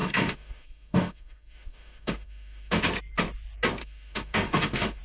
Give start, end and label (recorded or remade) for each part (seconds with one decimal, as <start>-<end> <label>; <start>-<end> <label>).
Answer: 0.0-2.8 remade; 2.8-3.8 recorded; 3.8-5.0 remade